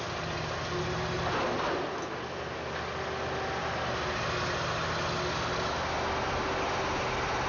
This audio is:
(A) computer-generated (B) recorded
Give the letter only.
B